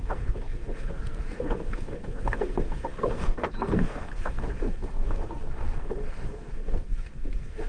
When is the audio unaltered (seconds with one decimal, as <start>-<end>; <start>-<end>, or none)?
none